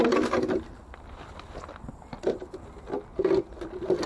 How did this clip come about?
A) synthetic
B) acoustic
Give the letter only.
B